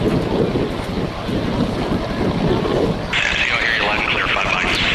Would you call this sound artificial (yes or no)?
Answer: no